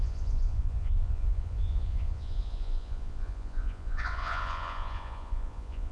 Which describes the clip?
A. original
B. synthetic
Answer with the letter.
B